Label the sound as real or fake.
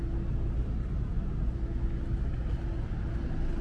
real